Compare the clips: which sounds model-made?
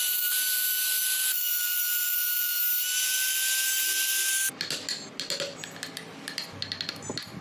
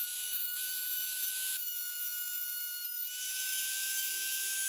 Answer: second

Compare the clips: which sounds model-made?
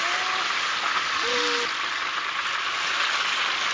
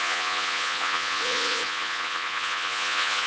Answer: second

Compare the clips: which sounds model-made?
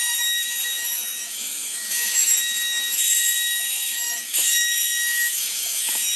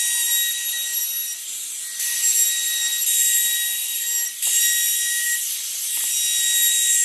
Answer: first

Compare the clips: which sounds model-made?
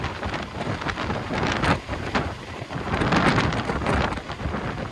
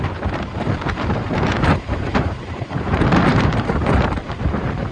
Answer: second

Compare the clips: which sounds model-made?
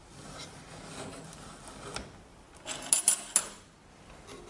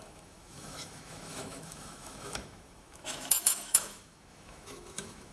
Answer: second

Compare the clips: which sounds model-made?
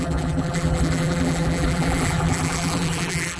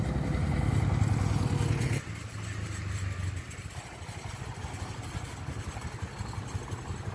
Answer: first